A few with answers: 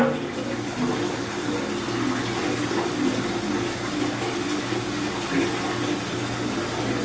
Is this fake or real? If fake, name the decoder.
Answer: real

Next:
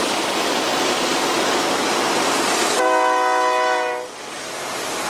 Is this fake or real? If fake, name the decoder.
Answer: real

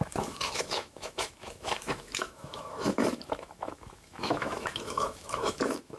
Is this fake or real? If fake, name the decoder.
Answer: fake, autoencoder, DAC-VAE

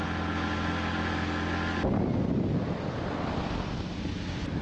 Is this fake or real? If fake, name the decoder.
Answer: real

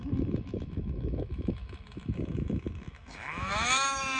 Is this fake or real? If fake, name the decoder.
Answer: fake, autoencoder, DAC-VAE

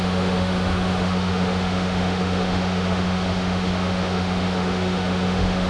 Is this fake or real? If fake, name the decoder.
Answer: fake, autoencoder, DAC-VAE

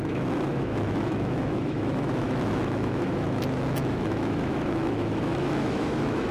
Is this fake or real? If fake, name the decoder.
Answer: fake, autoencoder, DAC-VAE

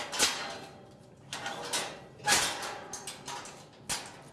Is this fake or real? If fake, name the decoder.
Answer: real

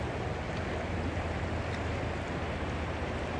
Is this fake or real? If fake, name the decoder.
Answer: real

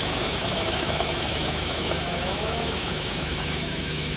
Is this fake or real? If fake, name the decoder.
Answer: fake, autoencoder, DAC-VAE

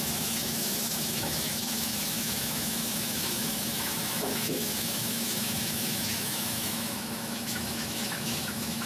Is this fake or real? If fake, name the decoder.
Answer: fake, autoencoder, DAC-VAE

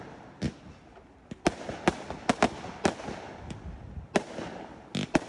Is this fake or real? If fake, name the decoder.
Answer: real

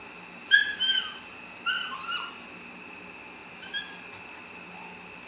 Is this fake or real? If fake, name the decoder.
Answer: real